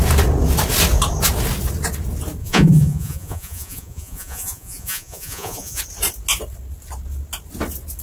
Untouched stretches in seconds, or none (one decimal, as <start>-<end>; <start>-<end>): 0.0-2.4; 5.8-8.0